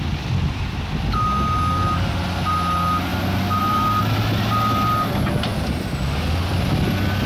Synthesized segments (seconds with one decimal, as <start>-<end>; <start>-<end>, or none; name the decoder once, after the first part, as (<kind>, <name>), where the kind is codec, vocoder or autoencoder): none